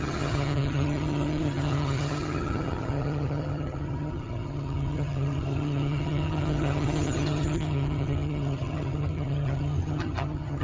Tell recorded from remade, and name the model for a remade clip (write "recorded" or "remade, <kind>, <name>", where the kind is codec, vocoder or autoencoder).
remade, vocoder, HiFi-GAN